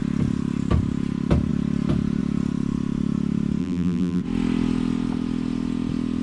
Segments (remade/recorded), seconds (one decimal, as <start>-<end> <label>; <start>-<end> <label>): 0.0-3.6 recorded; 3.6-4.2 remade; 4.2-6.2 recorded

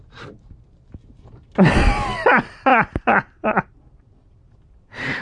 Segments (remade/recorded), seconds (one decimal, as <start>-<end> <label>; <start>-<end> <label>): 0.0-2.7 remade; 2.7-4.6 recorded; 4.6-5.2 remade

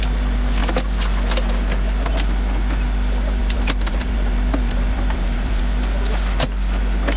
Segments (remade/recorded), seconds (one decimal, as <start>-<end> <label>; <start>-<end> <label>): 0.0-3.4 recorded; 3.4-5.6 remade; 5.6-7.2 recorded

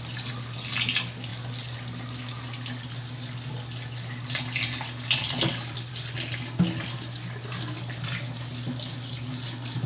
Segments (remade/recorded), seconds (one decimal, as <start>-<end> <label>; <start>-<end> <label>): 0.0-9.9 recorded

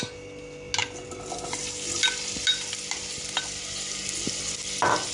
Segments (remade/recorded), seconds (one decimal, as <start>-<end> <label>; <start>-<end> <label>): 0.0-5.1 recorded